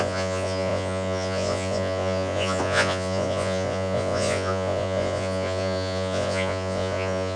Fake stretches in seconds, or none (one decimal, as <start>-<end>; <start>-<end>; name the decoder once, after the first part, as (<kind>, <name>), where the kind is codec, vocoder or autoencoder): 0.0-7.4 (vocoder, Vocos)